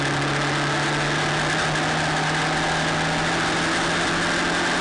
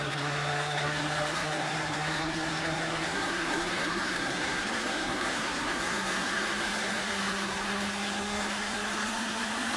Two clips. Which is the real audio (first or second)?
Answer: first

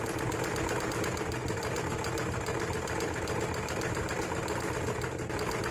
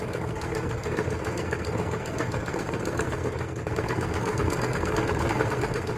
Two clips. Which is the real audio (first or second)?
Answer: first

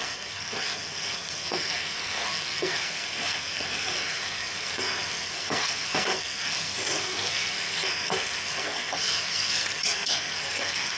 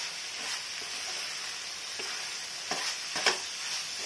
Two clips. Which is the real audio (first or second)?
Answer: second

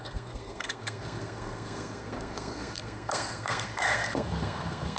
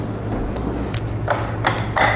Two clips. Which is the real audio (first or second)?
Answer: second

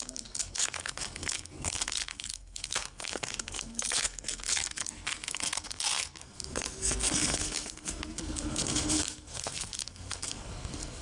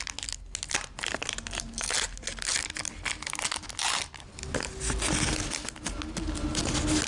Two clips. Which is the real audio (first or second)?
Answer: second